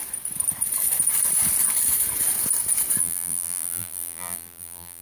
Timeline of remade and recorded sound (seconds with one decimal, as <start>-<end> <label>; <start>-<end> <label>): 0.0-3.0 recorded; 3.0-5.0 remade

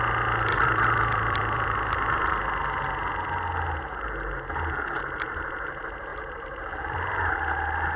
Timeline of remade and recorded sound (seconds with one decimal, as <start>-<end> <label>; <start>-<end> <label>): 0.0-0.5 recorded; 0.5-2.4 remade; 2.4-6.1 recorded; 6.1-7.3 remade; 7.3-8.0 recorded

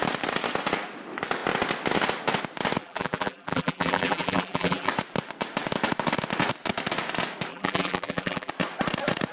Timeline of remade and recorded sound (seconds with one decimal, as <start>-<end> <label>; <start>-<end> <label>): 0.0-2.8 recorded; 2.8-4.9 remade; 4.9-7.5 recorded; 7.5-8.5 remade; 8.5-9.3 recorded

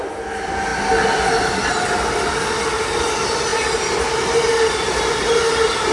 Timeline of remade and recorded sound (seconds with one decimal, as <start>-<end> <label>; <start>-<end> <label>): 0.0-5.9 recorded

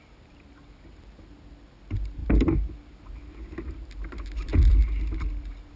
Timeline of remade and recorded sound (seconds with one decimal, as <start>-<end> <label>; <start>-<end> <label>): 0.0-5.8 recorded